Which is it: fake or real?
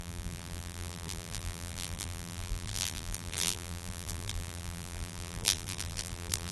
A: fake